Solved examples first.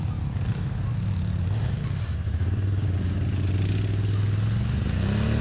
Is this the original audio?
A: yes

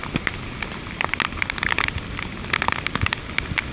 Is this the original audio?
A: yes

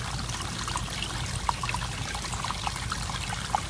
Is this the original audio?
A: yes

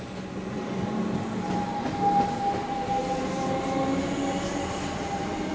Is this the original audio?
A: yes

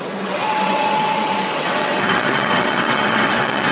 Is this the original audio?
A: no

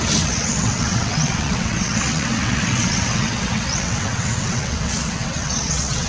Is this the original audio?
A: no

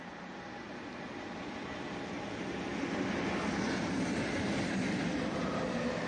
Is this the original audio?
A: yes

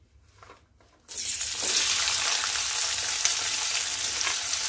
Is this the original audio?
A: yes